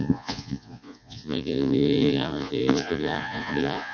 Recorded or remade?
remade